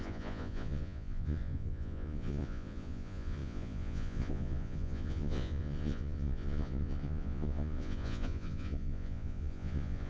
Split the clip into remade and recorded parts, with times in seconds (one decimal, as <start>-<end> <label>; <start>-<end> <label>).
0.0-10.1 remade